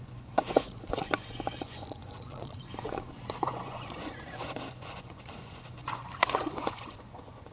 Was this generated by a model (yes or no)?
yes